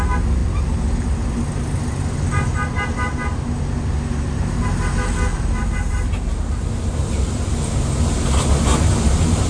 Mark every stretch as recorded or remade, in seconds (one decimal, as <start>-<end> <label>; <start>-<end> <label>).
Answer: 0.0-0.4 recorded; 0.4-1.3 remade; 1.3-5.3 recorded; 5.3-7.6 remade; 7.6-9.5 recorded

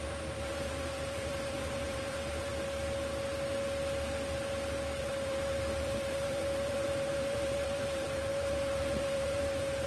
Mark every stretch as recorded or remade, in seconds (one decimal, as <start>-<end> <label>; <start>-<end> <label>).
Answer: 0.0-2.5 remade; 2.5-5.0 recorded; 5.0-9.9 remade